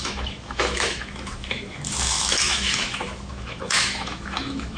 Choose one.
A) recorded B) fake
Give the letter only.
B